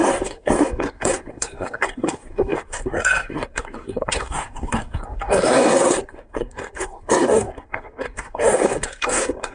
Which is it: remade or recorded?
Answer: remade